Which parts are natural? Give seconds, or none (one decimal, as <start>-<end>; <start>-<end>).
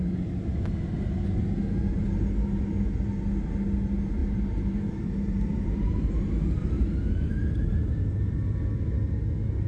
0.0-4.2; 6.1-6.6; 7.9-9.7